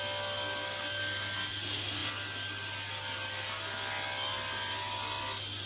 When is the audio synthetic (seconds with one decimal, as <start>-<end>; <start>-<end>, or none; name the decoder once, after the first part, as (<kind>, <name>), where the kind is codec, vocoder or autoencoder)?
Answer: none